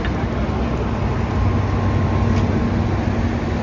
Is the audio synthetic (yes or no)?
no